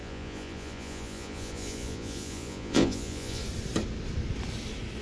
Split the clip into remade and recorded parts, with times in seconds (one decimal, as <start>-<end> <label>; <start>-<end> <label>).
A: 0.0-3.4 remade; 3.4-5.0 recorded